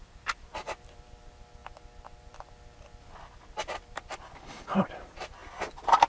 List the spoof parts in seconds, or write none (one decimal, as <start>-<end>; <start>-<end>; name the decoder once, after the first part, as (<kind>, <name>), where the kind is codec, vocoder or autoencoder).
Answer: 0.0-1.6 (vocoder, BigVGAN v2); 2.3-5.4